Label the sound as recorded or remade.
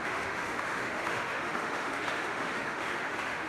remade